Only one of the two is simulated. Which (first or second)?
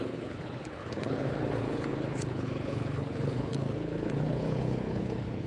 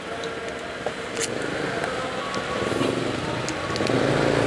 first